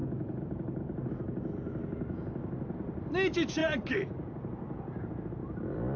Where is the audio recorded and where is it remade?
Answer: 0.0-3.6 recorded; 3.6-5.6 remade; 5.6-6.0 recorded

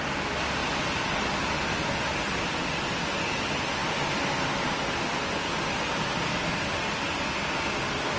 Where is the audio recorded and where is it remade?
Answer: 0.0-8.2 recorded

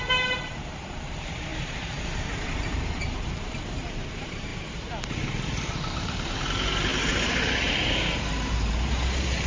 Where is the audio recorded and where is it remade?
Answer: 0.0-4.5 remade; 4.5-5.1 recorded; 5.1-9.5 remade

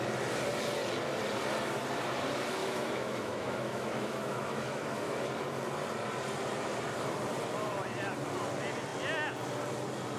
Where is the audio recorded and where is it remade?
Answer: 0.0-2.6 recorded; 2.6-5.3 remade; 5.3-10.2 recorded

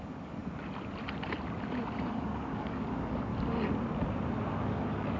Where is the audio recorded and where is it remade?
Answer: 0.0-0.4 remade; 0.4-2.1 recorded; 2.1-3.3 remade; 3.3-4.6 recorded; 4.6-5.2 remade